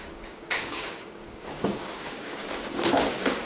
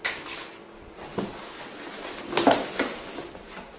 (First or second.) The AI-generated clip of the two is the first